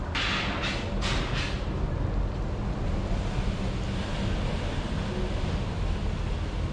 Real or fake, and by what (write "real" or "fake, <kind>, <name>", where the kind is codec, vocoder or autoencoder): real